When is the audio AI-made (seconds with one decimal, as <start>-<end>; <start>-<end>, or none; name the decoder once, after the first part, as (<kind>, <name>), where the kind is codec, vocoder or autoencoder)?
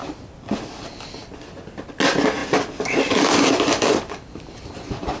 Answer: 2.4-5.2 (vocoder, BigVGAN v2)